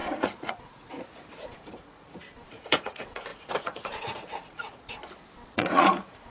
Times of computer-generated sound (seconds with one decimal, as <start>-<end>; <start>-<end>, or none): 0.0-5.0; 5.5-6.3